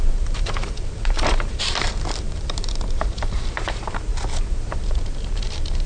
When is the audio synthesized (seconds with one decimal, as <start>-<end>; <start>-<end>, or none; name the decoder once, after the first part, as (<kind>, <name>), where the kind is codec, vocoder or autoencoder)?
0.0-5.9 (vocoder, BigVGAN v2)